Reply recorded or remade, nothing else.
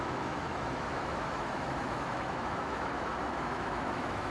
remade